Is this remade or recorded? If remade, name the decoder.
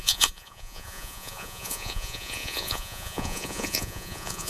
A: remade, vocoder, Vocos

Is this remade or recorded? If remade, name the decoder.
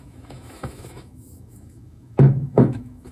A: remade, autoencoder, DAC-VAE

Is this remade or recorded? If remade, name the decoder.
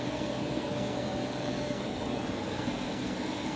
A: remade, codec, SNAC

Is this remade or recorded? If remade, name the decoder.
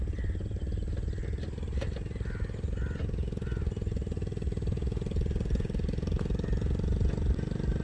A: recorded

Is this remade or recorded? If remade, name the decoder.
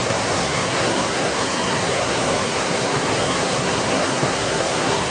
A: remade, codec, SNAC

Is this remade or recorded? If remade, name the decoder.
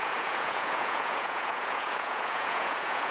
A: remade, vocoder, Vocos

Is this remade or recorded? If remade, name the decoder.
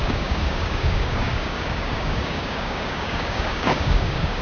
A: remade, codec, DAC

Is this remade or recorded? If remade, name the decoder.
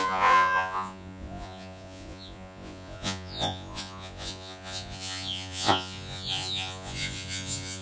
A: remade, vocoder, Vocos